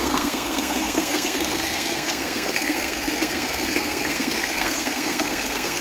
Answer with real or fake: fake